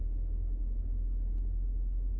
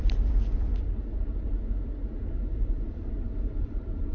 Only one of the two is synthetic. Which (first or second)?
second